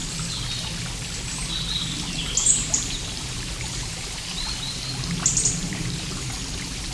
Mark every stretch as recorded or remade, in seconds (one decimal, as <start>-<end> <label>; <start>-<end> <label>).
0.0-2.4 recorded; 2.4-4.8 remade; 4.8-5.6 recorded; 5.6-6.3 remade; 6.3-6.9 recorded